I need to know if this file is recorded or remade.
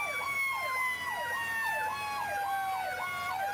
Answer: recorded